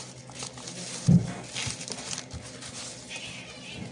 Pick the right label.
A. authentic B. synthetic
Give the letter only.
A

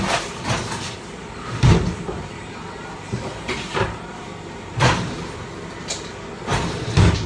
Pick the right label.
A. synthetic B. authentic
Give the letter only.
B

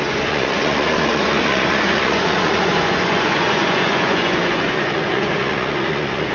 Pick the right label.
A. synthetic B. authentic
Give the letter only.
A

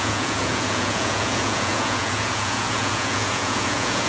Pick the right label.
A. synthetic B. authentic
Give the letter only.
A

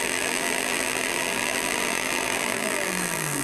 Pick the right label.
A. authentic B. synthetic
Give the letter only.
B